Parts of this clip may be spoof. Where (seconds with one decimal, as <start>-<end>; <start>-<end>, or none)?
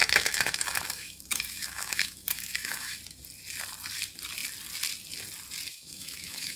0.0-3.0; 5.7-6.6